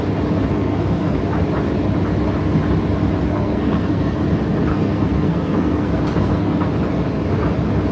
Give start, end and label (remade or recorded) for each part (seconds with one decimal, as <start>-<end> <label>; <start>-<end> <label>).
0.0-0.5 recorded; 0.5-1.2 remade; 1.2-3.3 recorded; 3.3-4.2 remade; 4.2-4.7 recorded; 4.7-6.7 remade; 6.7-7.9 recorded